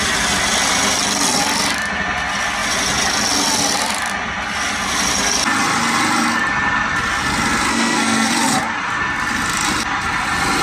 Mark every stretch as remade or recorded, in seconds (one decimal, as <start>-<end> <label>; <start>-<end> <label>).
0.0-7.7 recorded; 7.7-8.3 remade; 8.3-10.6 recorded